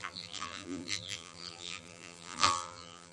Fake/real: fake